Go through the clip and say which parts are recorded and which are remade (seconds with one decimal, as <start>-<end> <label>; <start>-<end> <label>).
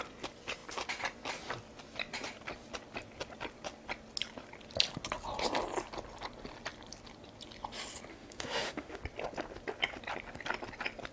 0.0-8.1 recorded; 8.1-9.0 remade; 9.0-11.1 recorded